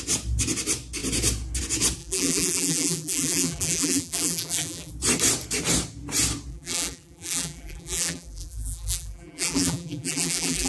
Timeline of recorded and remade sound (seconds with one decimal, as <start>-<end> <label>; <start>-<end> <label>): 0.0-2.0 recorded; 2.0-4.9 remade; 4.9-6.5 recorded; 6.5-10.7 remade